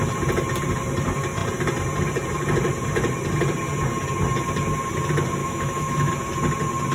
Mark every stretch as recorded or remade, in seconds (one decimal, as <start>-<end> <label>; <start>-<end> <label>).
0.0-5.4 recorded; 5.4-6.1 remade; 6.1-6.9 recorded